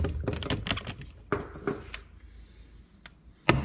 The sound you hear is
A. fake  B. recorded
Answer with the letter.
B